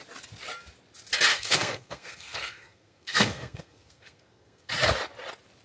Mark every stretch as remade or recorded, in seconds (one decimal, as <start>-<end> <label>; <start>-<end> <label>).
0.0-1.3 recorded; 1.3-4.7 remade; 4.7-5.6 recorded